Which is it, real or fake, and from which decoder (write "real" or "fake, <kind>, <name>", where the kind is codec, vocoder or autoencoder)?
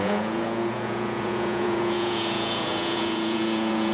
fake, vocoder, Vocos